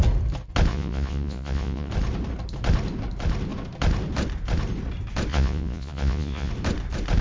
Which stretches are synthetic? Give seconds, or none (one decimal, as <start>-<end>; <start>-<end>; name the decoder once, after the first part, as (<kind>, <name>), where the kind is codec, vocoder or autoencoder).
0.7-1.9 (vocoder, Vocos); 5.3-6.5